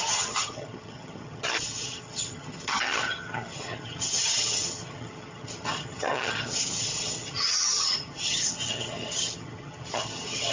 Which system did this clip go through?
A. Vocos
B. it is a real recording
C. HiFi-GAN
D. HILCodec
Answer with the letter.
C